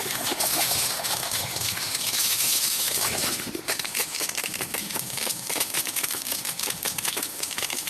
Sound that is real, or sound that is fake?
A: fake